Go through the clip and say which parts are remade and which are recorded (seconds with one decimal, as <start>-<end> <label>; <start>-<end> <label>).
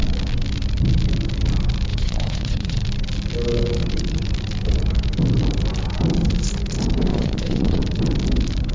0.0-1.9 recorded; 1.9-2.8 remade; 2.8-7.1 recorded; 7.1-7.8 remade; 7.8-8.7 recorded